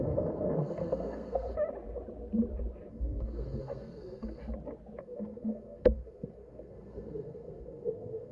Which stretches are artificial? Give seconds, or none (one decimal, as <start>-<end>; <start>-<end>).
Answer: 0.0-1.5; 2.9-4.4; 5.0-8.3